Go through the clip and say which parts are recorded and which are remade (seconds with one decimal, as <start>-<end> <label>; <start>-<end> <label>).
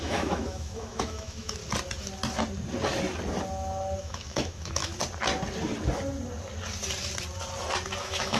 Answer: 0.0-1.6 remade; 1.6-4.0 recorded; 4.0-4.9 remade; 4.9-8.0 recorded; 8.0-8.4 remade